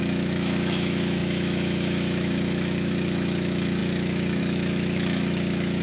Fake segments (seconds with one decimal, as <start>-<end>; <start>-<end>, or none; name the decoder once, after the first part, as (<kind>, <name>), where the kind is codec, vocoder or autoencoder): 0.0-5.8 (autoencoder, DAC-VAE)